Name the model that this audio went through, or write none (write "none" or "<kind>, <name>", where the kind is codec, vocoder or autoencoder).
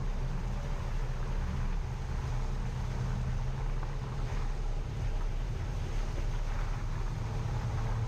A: none